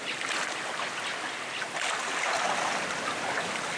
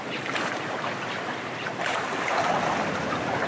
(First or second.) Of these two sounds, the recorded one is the first